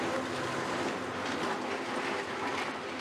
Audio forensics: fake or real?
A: real